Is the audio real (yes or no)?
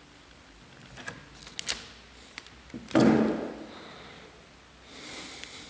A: yes